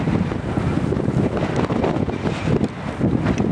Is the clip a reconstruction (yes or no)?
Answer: no